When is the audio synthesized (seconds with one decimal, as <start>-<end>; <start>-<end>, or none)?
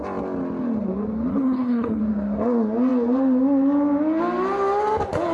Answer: 1.3-2.0